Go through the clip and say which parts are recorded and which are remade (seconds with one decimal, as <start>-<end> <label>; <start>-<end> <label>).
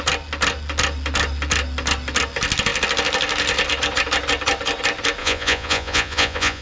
0.0-5.2 recorded; 5.2-6.6 remade